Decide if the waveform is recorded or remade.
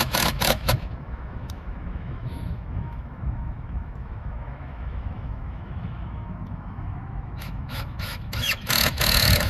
remade